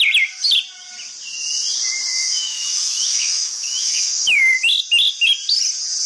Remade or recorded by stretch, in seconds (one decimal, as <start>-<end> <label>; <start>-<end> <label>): 0.0-2.1 recorded; 2.1-4.8 remade; 4.8-6.1 recorded